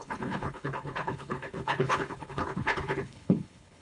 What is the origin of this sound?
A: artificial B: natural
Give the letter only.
A